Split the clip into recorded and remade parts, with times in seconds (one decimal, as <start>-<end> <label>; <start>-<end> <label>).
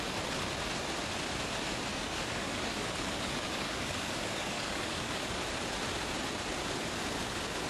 0.0-1.9 recorded; 1.9-5.4 remade; 5.4-7.7 recorded